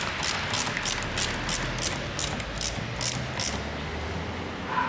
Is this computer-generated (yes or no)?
no